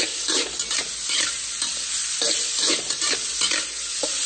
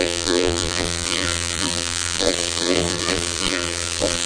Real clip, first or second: first